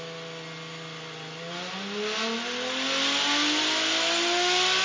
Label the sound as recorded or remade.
recorded